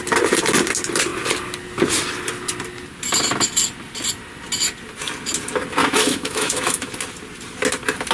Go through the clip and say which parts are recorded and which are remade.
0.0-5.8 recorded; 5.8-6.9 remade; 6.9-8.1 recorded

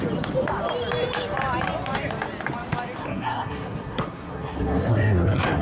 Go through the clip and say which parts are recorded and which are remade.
0.0-3.0 recorded; 3.0-5.6 remade

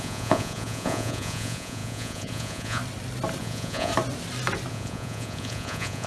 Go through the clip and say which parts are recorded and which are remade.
0.0-2.8 remade; 2.8-3.4 recorded; 3.4-3.9 remade; 3.9-4.7 recorded; 4.7-6.1 remade

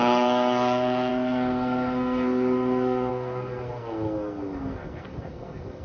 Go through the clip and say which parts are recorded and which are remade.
0.0-5.8 remade

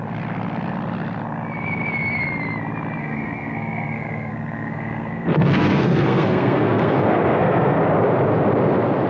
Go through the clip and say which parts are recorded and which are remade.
0.0-3.0 recorded; 3.0-7.8 remade; 7.8-9.1 recorded

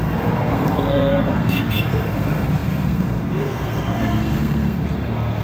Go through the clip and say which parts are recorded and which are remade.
0.0-5.4 remade

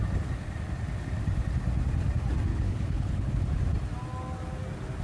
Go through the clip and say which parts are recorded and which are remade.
0.0-2.5 recorded; 2.5-3.3 remade; 3.3-5.0 recorded

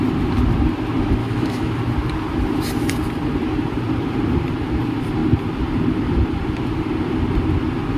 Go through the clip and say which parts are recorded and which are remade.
0.0-1.2 recorded; 1.2-1.8 remade; 1.8-8.0 recorded